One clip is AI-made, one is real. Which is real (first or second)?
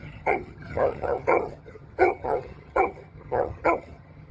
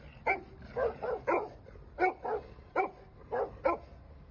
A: second